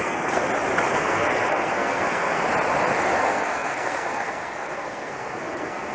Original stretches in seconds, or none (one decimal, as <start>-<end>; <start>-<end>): 0.4-0.9; 2.4-3.0